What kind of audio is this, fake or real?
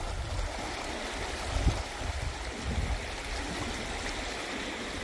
real